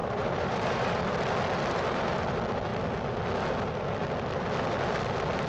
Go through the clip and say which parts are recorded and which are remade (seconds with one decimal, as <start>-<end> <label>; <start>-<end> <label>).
0.0-1.0 remade; 1.0-5.5 recorded